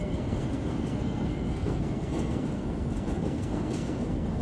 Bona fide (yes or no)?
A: no